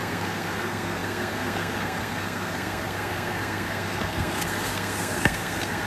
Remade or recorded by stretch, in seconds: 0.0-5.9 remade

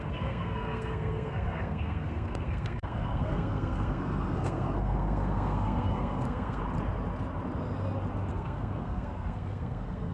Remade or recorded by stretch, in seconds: 0.0-6.6 remade; 6.6-8.3 recorded; 8.3-10.1 remade

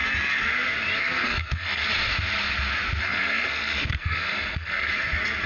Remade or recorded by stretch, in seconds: 0.0-1.0 recorded; 1.0-1.8 remade; 1.8-3.0 recorded; 3.0-4.9 remade; 4.9-5.5 recorded

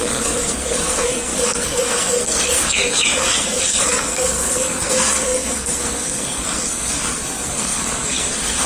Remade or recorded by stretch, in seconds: 0.0-8.7 remade